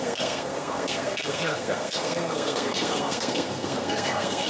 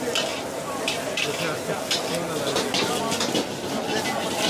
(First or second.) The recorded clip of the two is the second